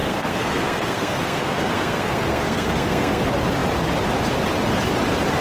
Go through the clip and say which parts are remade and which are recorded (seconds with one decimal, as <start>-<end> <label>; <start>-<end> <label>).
0.0-3.2 remade; 3.2-5.4 recorded